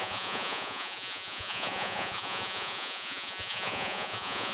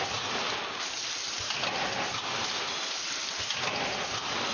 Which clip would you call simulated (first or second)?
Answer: first